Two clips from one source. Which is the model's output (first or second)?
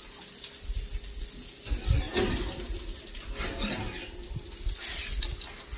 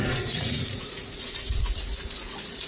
second